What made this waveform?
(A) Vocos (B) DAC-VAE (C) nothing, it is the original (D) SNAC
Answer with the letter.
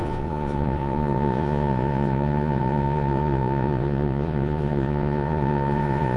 A